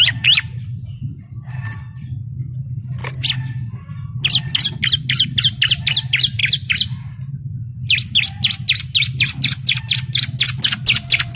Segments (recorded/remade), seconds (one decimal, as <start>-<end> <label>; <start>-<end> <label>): 0.0-6.4 recorded; 6.4-9.8 remade; 9.8-11.4 recorded

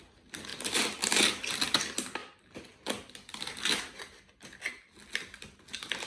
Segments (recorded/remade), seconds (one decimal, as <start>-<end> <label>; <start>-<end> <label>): 0.0-6.1 recorded

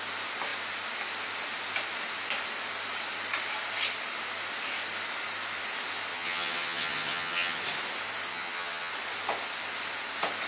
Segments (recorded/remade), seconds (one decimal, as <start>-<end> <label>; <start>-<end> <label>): 0.0-6.1 recorded; 6.1-7.6 remade; 7.6-8.3 recorded; 8.3-8.9 remade; 8.9-10.5 recorded

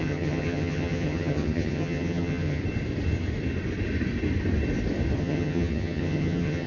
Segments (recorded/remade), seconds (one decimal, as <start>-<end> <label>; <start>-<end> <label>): 0.0-2.6 remade; 2.6-5.2 recorded; 5.2-6.7 remade

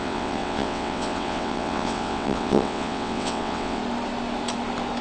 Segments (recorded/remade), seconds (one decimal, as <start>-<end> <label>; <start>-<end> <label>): 0.0-3.8 remade; 3.8-5.0 recorded

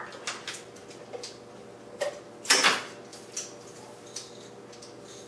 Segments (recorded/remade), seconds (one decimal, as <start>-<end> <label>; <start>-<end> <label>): 0.0-5.3 recorded